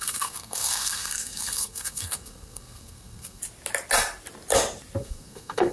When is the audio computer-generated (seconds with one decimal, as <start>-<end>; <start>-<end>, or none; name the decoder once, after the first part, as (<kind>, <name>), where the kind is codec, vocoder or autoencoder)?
0.0-3.4 (codec, SNAC); 5.0-5.7